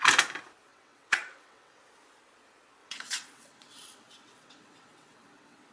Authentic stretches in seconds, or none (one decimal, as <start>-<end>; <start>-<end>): 0.0-0.7; 1.8-2.8